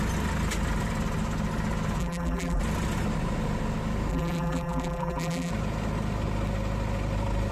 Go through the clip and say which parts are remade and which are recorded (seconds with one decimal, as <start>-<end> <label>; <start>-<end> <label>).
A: 0.0-2.0 recorded; 2.0-2.6 remade; 2.6-4.1 recorded; 4.1-5.5 remade; 5.5-7.5 recorded